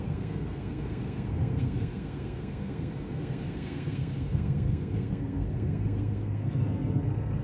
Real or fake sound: fake